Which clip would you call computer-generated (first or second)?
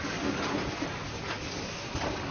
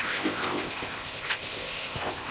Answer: second